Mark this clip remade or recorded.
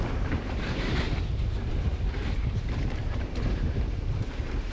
remade